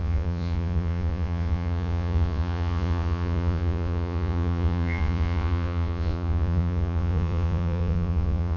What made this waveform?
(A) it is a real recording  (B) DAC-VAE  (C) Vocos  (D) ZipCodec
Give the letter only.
C